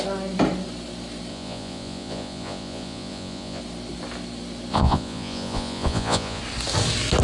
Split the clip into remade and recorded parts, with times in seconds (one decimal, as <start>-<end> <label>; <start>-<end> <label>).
0.0-1.3 recorded; 1.3-3.6 remade; 3.6-4.7 recorded; 4.7-6.4 remade; 6.4-7.2 recorded